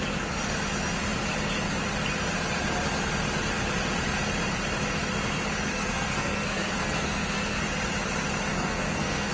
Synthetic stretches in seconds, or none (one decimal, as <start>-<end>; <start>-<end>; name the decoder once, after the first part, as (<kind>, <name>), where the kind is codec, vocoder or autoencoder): 5.7-7.6 (codec, SNAC); 8.5-9.3